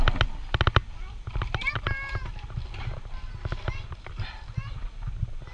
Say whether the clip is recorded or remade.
recorded